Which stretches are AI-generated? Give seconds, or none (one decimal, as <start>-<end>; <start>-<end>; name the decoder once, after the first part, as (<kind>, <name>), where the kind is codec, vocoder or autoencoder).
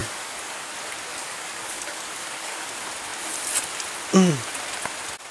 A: 0.0-0.7 (codec, DAC); 1.1-2.7